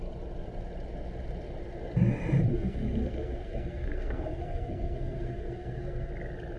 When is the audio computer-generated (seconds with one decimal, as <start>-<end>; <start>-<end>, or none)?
2.5-6.1